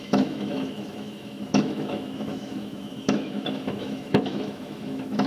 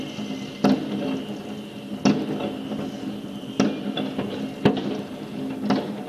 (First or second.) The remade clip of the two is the first